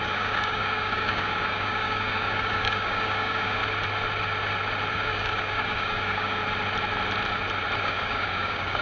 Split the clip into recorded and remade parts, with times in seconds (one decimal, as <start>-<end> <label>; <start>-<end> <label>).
0.0-3.6 remade; 3.6-4.9 recorded; 4.9-6.4 remade; 6.4-7.8 recorded; 7.8-8.8 remade